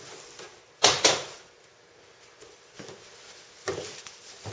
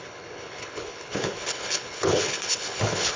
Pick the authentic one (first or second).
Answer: first